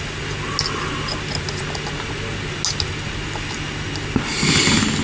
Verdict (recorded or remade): recorded